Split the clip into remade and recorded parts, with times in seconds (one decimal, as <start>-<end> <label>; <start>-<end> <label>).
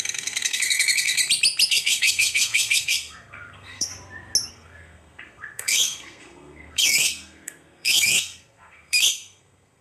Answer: 0.0-1.2 remade; 1.2-1.7 recorded; 1.7-3.9 remade; 3.9-4.5 recorded; 4.5-9.8 remade